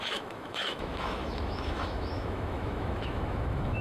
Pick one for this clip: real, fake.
fake